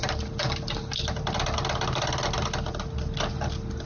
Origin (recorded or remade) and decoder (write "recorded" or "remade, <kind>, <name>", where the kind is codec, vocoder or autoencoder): recorded